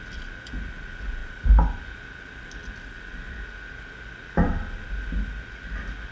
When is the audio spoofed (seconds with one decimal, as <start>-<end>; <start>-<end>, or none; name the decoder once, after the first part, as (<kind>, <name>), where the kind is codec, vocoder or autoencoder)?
1.2-1.8 (vocoder, BigVGAN v2)